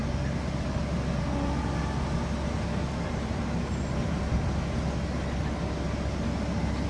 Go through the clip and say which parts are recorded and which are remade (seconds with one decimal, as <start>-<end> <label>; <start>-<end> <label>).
0.0-6.9 recorded